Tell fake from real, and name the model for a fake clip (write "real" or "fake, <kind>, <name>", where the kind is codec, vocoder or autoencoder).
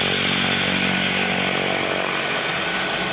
real